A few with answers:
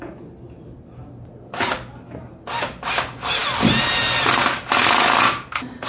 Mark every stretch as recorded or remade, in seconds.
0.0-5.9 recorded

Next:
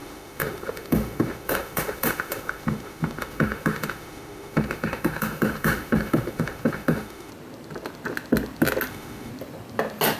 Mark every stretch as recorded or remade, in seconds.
0.0-7.3 remade; 7.3-8.9 recorded; 8.9-9.3 remade; 9.3-10.2 recorded

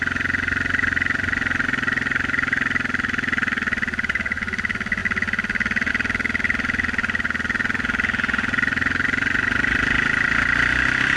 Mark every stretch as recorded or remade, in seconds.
0.0-11.2 recorded

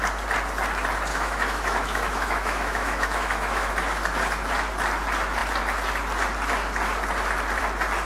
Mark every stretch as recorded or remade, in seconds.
0.0-1.1 recorded; 1.1-3.7 remade; 3.7-8.1 recorded

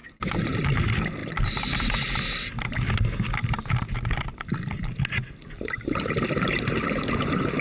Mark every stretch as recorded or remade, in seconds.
0.0-7.6 recorded

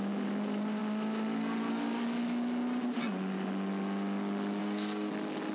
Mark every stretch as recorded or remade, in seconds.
0.0-4.6 recorded; 4.6-5.1 remade; 5.1-5.5 recorded